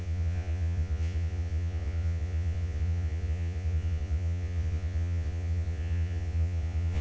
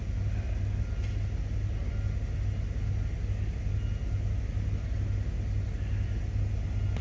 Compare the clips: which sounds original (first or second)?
second